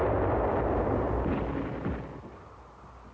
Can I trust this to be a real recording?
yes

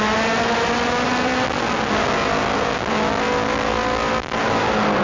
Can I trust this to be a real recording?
yes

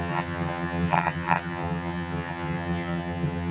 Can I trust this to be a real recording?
no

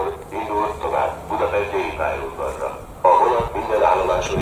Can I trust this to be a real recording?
yes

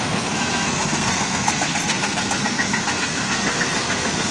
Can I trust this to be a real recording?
no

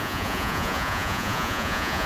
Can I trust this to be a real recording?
no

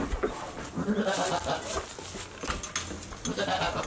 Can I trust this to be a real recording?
yes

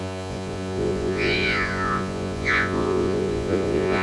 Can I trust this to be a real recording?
no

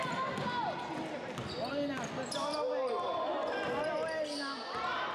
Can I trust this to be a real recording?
yes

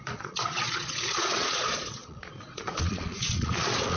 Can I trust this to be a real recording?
no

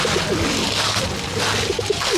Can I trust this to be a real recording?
no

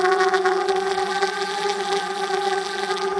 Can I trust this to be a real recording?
no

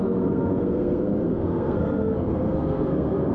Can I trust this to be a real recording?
no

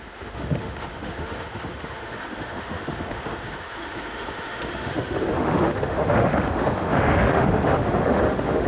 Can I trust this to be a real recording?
no